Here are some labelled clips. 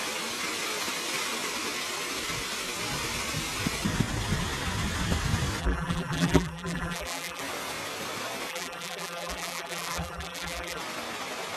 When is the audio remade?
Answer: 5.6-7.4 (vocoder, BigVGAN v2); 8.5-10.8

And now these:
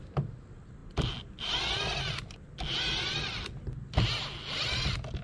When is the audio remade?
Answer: none